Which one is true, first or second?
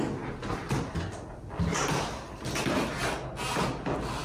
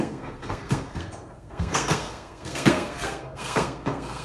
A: first